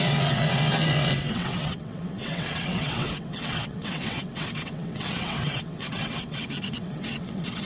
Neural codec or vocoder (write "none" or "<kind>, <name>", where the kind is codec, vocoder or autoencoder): vocoder, WaveNeXt